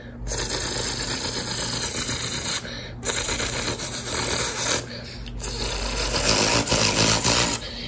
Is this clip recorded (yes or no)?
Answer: yes